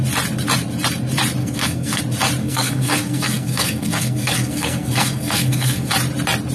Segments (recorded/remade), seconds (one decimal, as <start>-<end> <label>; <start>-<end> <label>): 0.0-1.4 recorded; 1.4-2.0 remade; 2.0-2.4 recorded; 2.4-5.9 remade; 5.9-6.5 recorded